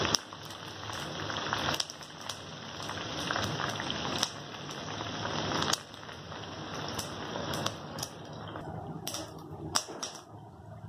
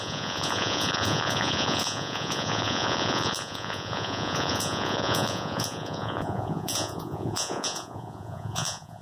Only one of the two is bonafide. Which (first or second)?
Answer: first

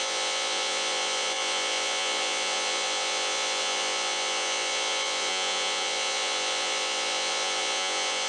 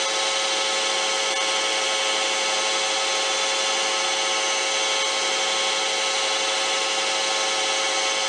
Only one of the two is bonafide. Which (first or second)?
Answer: second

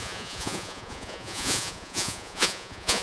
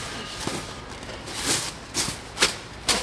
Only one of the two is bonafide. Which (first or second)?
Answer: second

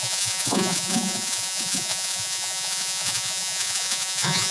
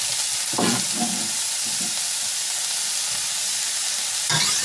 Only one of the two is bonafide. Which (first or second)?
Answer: second